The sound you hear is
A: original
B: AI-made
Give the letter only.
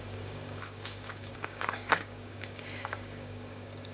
B